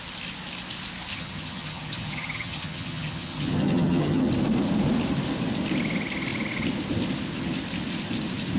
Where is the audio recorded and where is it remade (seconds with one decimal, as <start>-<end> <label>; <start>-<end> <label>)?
0.0-1.1 recorded; 1.1-4.3 remade; 4.3-8.6 recorded